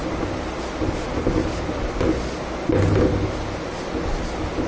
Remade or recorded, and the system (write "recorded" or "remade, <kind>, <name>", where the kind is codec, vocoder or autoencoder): recorded